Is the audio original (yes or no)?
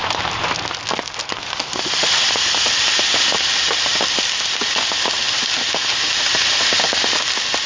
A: yes